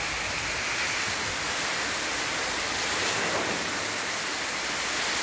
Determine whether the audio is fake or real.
real